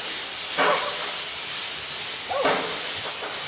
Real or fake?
real